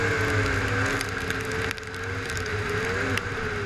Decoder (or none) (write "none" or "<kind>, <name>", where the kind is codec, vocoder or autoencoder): none